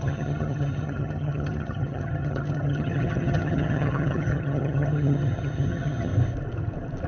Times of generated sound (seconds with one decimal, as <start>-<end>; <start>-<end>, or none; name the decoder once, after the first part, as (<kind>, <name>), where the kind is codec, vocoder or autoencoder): 0.0-6.1 (vocoder, HiFi-GAN)